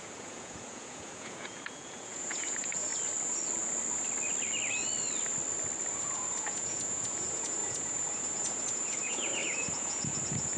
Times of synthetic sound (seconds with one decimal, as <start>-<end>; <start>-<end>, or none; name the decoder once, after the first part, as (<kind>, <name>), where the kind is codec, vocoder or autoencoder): 0.0-2.9 (vocoder, Vocos); 5.9-10.6